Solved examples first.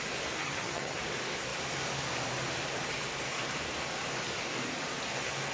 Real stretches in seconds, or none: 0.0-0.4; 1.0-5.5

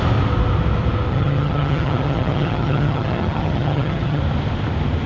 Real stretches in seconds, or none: 0.0-1.1; 4.2-5.1

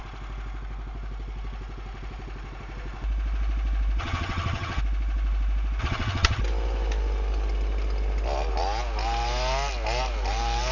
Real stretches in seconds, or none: 0.0-4.0; 4.8-5.8; 6.4-10.7